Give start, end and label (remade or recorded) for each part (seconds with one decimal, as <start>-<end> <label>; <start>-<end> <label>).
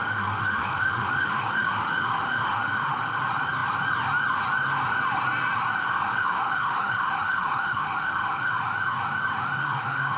0.0-3.2 remade; 3.2-5.8 recorded; 5.8-8.6 remade; 8.6-9.6 recorded; 9.6-10.2 remade